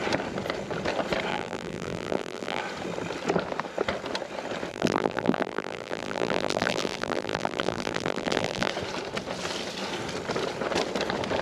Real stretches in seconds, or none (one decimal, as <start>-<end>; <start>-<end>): 0.0-1.3; 2.6-4.7; 8.7-11.4